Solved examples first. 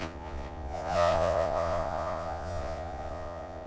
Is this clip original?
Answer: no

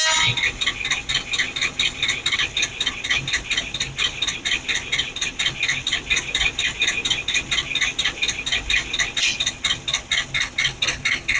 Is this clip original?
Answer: yes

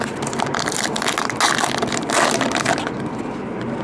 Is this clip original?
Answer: yes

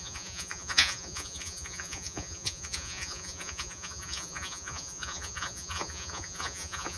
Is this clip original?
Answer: no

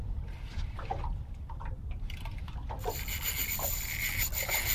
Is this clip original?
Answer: yes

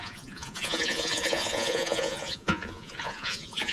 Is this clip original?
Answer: no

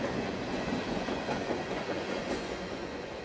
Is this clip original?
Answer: no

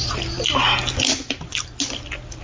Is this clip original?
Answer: yes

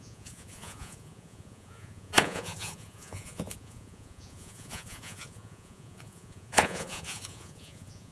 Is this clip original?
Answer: no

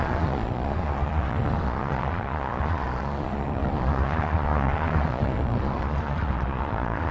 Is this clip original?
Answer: no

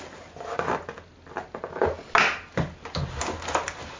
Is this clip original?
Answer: yes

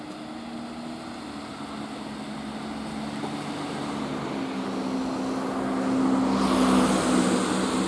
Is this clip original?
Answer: yes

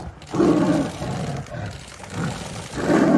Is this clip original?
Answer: yes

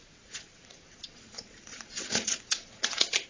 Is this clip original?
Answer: no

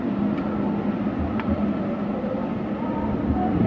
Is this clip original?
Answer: yes